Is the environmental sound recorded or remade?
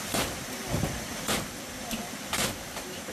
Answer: recorded